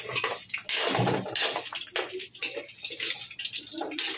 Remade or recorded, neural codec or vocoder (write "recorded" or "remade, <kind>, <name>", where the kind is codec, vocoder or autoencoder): recorded